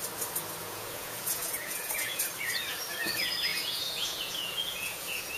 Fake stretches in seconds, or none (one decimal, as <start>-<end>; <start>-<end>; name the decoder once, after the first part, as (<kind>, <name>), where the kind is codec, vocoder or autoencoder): 0.6-2.2 (vocoder, Vocos); 3.5-5.4